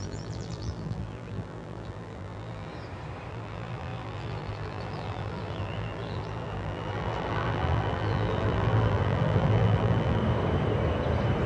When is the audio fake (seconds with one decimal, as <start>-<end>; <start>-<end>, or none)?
0.0-2.7; 3.3-10.2